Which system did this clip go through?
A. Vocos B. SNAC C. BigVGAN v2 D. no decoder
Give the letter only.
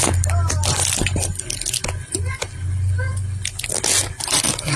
D